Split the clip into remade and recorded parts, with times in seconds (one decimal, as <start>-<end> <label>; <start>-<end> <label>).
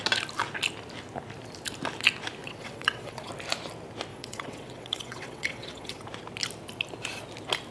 0.0-2.4 recorded; 2.4-3.3 remade; 3.3-4.1 recorded; 4.1-6.0 remade; 6.0-7.7 recorded